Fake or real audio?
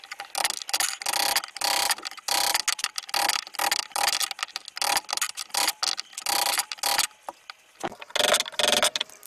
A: real